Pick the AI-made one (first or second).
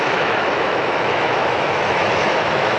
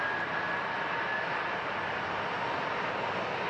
first